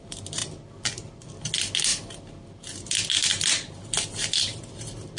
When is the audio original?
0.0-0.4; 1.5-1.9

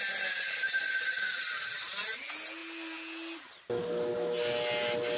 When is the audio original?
0.0-5.2

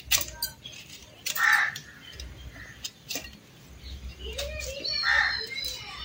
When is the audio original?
0.0-1.0; 3.5-6.0

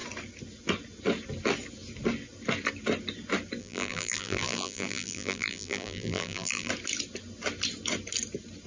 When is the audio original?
0.0-3.6; 6.7-8.7